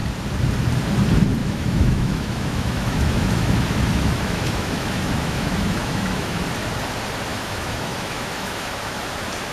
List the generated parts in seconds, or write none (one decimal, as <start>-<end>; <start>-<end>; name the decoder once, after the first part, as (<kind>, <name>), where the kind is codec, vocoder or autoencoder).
1.4-6.4 (autoencoder, DAC-VAE); 7.3-9.0